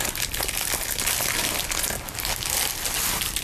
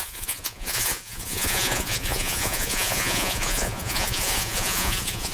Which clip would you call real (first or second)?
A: first